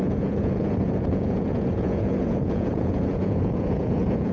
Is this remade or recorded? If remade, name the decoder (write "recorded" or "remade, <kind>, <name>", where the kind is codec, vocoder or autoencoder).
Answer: remade, vocoder, Vocos